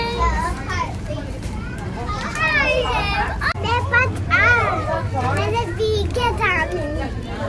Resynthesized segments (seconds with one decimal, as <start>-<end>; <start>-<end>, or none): 0.0-3.7; 6.1-7.5